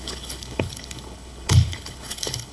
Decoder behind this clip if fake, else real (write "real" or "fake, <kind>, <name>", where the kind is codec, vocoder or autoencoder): fake, codec, HILCodec